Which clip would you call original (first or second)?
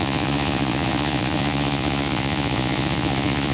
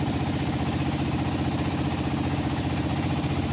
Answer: second